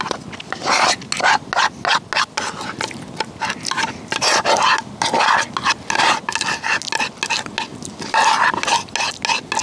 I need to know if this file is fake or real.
real